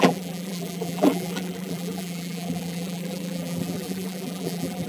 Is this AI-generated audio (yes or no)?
yes